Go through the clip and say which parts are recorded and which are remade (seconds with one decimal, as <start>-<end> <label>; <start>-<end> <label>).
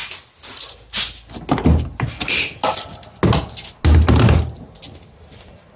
0.0-5.8 recorded